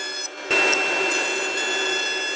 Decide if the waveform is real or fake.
real